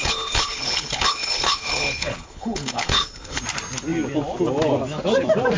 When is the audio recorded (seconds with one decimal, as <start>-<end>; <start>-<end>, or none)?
3.4-5.6